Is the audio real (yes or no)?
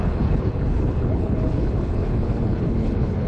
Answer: no